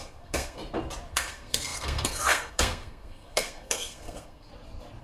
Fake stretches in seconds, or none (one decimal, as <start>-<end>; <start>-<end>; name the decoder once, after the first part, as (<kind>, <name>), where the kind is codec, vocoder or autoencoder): 0.0-0.6 (codec, SNAC); 1.1-4.5